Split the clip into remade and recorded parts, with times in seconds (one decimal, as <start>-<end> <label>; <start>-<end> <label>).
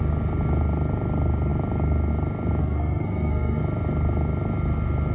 0.0-2.6 recorded; 2.6-3.6 remade; 3.6-5.1 recorded